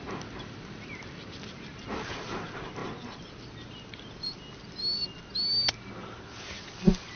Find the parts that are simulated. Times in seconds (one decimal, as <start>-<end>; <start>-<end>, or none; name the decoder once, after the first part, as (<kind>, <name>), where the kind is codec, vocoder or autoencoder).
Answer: none